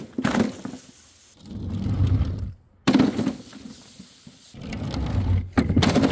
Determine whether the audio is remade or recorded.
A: recorded